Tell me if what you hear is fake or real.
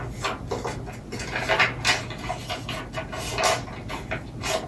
real